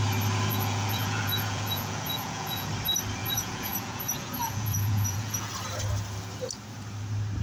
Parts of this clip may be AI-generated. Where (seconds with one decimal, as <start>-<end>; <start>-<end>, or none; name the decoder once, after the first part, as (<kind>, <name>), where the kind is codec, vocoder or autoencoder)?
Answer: 0.5-2.7 (vocoder, Vocos); 3.2-5.5